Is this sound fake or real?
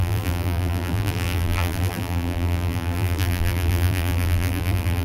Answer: fake